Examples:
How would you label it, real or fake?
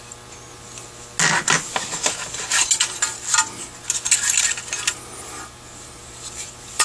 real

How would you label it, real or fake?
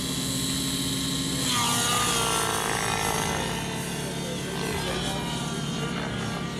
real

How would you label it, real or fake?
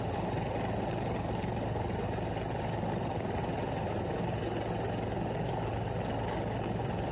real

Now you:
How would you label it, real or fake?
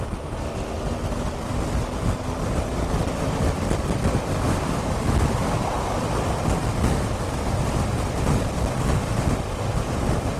real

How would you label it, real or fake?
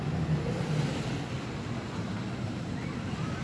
real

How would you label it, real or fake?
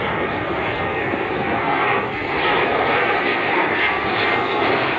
fake